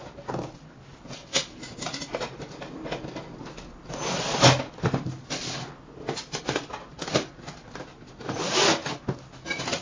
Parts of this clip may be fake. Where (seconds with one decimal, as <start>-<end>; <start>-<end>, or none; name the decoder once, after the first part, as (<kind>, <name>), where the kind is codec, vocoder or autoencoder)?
none